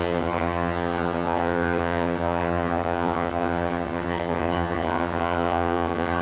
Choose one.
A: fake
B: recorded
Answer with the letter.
A